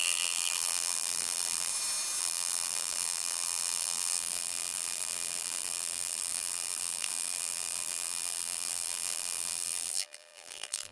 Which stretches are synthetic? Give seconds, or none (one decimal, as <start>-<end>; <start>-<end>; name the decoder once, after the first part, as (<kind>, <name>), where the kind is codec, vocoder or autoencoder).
0.0-1.7 (vocoder, BigVGAN v2); 2.2-10.9